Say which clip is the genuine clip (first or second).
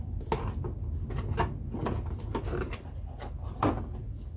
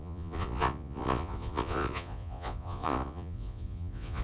first